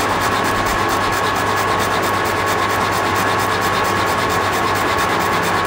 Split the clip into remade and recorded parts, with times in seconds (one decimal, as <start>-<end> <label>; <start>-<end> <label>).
0.0-0.7 remade; 0.7-4.1 recorded; 4.1-5.7 remade